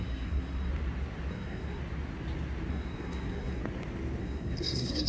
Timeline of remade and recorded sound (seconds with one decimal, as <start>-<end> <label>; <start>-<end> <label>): 0.0-0.7 remade; 0.7-1.3 recorded; 1.3-1.8 remade; 1.8-2.7 recorded; 2.7-3.6 remade; 3.6-4.2 recorded; 4.2-5.1 remade